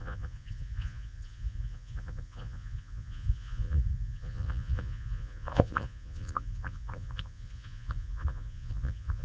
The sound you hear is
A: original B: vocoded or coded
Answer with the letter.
B